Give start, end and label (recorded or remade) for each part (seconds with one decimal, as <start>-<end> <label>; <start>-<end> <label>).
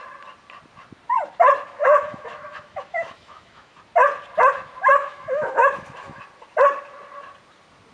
0.0-1.8 recorded; 1.8-3.8 remade; 3.8-5.0 recorded; 5.0-6.2 remade; 6.2-7.9 recorded